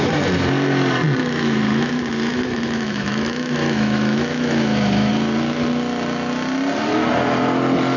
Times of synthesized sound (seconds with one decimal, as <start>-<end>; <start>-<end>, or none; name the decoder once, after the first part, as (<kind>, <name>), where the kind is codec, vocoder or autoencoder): 1.2-1.9 (autoencoder, DAC-VAE); 2.3-5.1